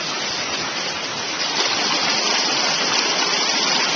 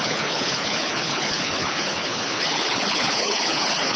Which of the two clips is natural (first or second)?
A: first